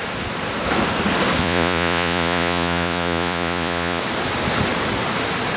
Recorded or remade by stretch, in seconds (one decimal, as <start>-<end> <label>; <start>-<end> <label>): 0.0-1.4 recorded; 1.4-4.0 remade; 4.0-5.6 recorded